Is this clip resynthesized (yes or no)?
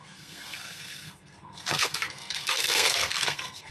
yes